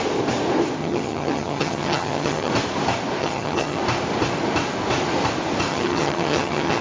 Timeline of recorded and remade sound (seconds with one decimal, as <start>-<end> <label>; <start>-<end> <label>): 0.0-0.8 recorded; 0.8-2.5 remade; 2.5-3.2 recorded; 3.2-3.8 remade; 3.8-5.7 recorded; 5.7-6.8 remade

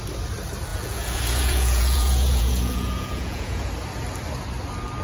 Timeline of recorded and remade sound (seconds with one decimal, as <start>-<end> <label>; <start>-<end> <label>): 0.0-0.7 recorded; 0.7-3.7 remade; 3.7-5.0 recorded

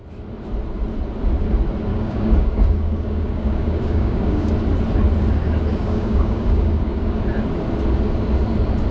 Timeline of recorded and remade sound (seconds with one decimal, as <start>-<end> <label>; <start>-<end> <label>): 0.0-1.9 recorded; 1.9-4.5 remade; 4.5-5.7 recorded; 5.7-7.2 remade; 7.2-8.9 recorded

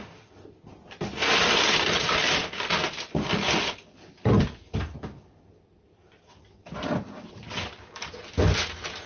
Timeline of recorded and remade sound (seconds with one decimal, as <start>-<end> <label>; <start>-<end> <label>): 0.0-9.1 recorded